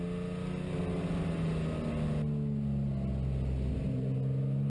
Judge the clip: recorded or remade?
recorded